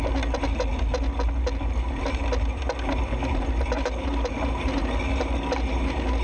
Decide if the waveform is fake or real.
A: real